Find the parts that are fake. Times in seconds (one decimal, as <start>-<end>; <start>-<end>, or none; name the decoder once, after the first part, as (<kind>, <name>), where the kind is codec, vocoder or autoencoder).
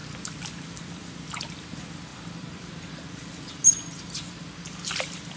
none